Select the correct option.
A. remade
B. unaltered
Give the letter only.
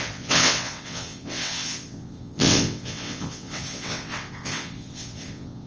A